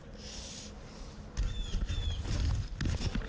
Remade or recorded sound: recorded